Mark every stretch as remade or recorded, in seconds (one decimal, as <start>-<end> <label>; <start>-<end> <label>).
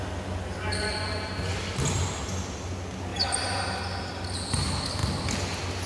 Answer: 0.0-3.1 recorded; 3.1-3.8 remade; 3.8-5.9 recorded